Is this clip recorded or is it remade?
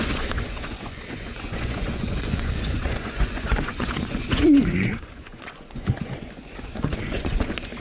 remade